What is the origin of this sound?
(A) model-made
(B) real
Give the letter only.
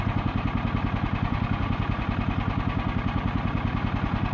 B